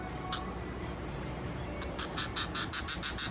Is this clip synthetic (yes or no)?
no